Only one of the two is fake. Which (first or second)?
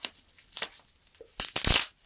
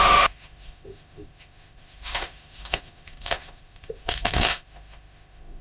second